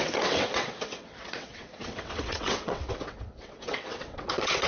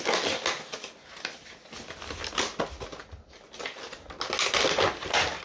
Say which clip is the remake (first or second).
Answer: first